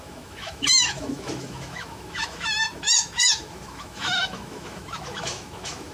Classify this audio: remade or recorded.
remade